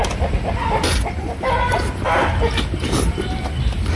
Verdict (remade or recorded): recorded